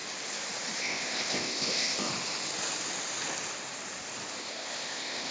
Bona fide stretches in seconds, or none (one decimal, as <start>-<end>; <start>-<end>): 0.0-0.8; 2.1-4.4